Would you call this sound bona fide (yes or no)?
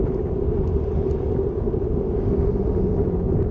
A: yes